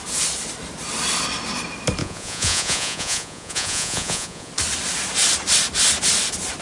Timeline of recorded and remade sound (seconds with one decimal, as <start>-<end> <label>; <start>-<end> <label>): 0.0-2.0 recorded; 2.0-4.5 remade; 4.5-6.6 recorded